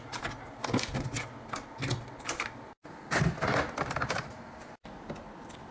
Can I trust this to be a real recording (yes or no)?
yes